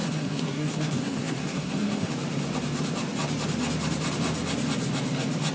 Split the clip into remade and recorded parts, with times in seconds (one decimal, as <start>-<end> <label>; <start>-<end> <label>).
0.0-2.1 remade; 2.1-5.5 recorded